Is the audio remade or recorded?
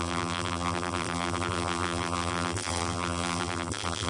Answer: remade